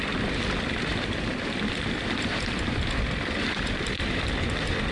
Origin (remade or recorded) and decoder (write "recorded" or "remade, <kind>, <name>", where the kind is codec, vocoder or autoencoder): recorded